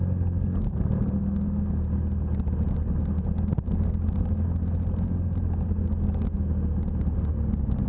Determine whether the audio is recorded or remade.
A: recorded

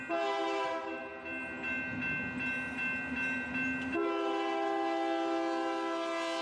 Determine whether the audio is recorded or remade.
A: recorded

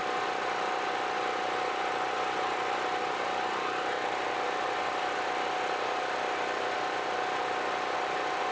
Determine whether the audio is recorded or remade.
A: recorded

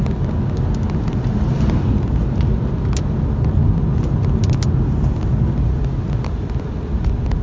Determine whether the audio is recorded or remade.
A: recorded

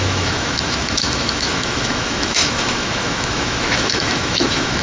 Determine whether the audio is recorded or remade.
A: remade